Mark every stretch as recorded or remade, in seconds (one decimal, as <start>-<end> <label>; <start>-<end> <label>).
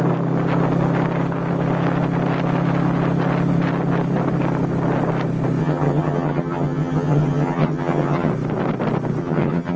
0.0-5.6 recorded; 5.6-8.3 remade; 8.3-9.2 recorded; 9.2-9.8 remade